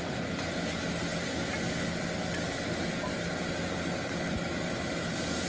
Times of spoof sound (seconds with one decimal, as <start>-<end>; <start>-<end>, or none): none